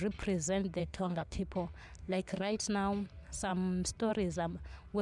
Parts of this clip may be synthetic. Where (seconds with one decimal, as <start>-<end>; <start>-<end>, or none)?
0.8-1.4; 2.0-2.6